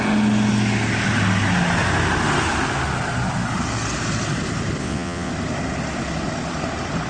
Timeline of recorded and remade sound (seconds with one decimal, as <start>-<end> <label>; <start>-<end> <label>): 0.0-4.8 recorded; 4.8-5.3 remade; 5.3-7.1 recorded